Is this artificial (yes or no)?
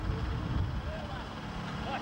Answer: no